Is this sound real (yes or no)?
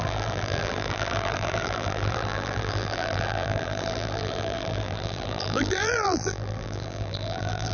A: no